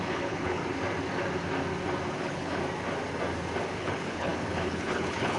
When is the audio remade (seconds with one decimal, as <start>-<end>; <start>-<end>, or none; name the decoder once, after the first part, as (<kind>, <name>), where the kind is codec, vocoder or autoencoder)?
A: 0.0-0.6 (codec, HILCodec); 2.2-2.6; 3.7-5.4